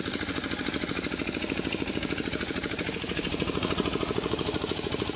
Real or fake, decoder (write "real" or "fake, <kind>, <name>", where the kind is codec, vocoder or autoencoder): fake, vocoder, Vocos